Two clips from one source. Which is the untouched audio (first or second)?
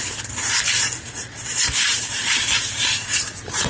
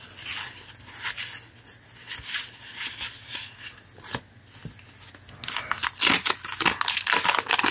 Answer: second